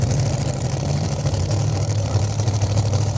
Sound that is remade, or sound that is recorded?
remade